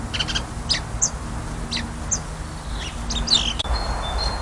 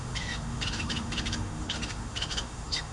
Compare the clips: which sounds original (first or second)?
first